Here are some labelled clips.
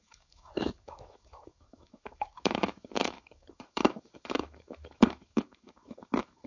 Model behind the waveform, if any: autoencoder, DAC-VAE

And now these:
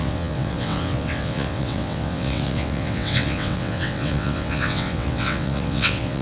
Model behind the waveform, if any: vocoder, WaveNeXt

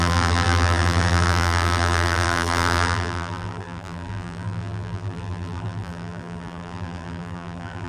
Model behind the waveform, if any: vocoder, BigVGAN v2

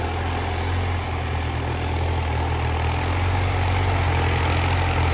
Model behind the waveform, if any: none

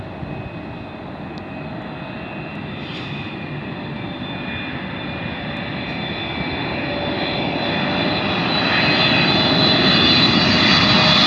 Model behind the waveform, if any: none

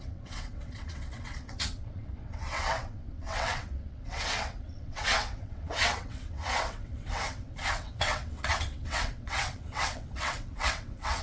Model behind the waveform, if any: vocoder, WaveNeXt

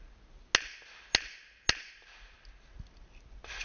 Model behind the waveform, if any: none